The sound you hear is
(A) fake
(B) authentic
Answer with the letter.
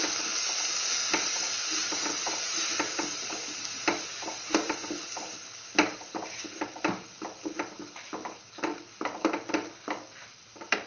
B